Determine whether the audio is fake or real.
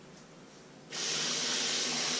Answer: real